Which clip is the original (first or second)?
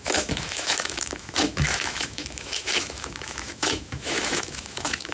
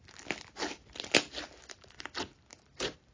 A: second